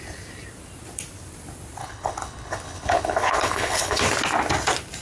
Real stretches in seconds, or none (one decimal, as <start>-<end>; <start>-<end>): 0.0-1.8; 4.0-5.0